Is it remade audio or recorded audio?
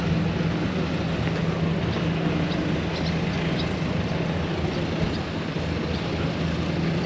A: recorded